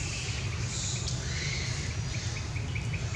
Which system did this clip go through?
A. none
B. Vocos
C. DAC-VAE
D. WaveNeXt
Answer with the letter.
A